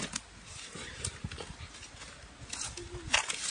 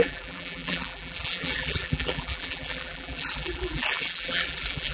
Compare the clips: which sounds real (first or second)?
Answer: first